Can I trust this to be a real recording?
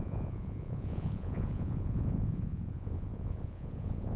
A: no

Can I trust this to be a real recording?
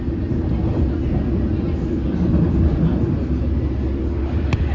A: yes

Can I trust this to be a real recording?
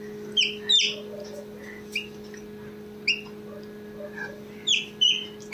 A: yes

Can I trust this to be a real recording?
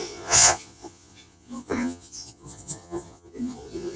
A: no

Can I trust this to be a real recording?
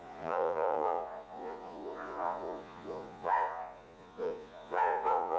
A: no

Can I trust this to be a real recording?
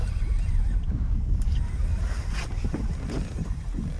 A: yes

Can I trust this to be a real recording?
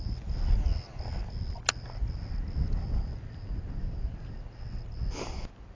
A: yes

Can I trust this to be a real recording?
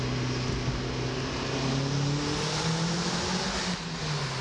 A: yes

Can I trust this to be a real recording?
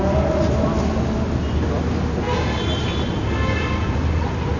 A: yes